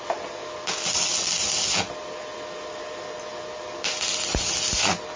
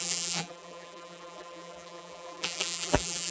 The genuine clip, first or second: first